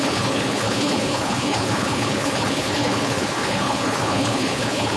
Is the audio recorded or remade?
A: remade